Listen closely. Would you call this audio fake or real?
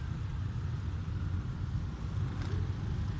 real